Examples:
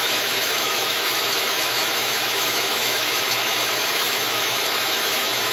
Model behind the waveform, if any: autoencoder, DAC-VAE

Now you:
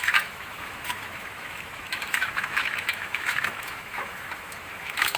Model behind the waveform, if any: autoencoder, DAC-VAE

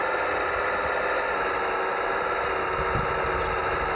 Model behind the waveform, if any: none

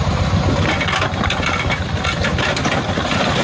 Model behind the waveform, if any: none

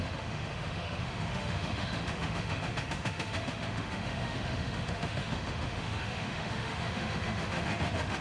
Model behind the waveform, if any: autoencoder, DAC-VAE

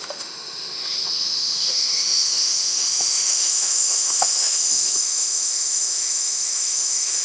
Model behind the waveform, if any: autoencoder, DAC-VAE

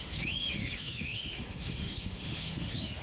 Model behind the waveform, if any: autoencoder, DAC-VAE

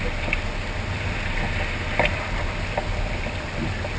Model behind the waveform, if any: none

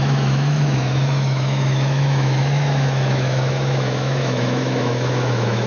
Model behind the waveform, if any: autoencoder, DAC-VAE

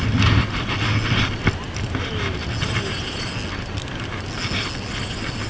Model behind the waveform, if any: none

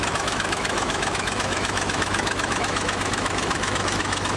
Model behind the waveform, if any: autoencoder, DAC-VAE